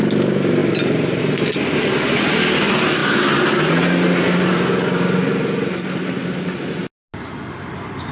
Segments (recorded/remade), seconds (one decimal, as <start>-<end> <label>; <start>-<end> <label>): 0.0-8.1 recorded